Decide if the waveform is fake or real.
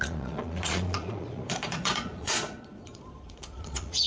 fake